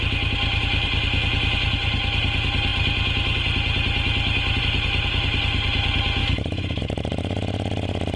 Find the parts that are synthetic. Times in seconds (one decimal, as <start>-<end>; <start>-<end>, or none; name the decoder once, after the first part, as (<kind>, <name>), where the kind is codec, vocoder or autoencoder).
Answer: 6.2-6.8 (autoencoder, DAC-VAE)